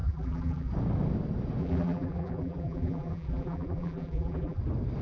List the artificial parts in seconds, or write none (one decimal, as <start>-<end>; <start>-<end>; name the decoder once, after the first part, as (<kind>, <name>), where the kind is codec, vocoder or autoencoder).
0.0-0.7 (vocoder, BigVGAN v2); 1.6-4.6